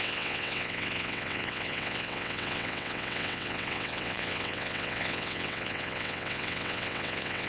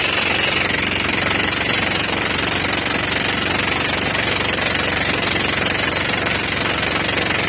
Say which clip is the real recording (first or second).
second